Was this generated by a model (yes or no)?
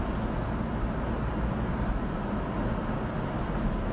no